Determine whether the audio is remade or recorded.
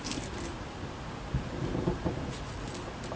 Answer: recorded